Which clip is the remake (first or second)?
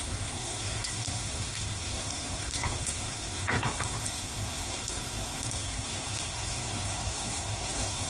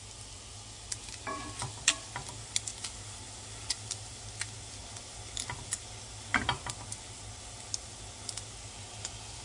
first